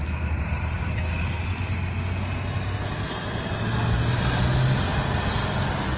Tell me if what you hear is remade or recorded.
recorded